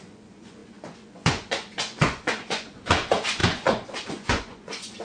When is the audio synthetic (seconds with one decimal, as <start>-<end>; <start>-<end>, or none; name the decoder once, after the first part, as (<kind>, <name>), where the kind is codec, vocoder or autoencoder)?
0.0-5.0 (vocoder, Vocos)